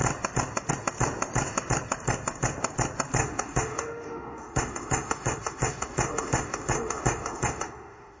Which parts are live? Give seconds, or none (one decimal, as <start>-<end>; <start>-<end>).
0.0-3.2